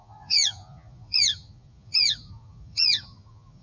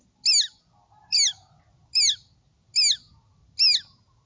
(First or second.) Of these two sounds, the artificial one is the first